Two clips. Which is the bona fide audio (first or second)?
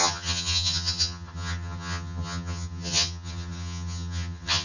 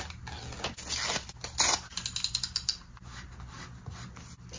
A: second